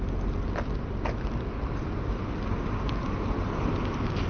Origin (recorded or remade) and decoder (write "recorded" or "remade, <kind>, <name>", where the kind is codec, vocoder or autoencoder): recorded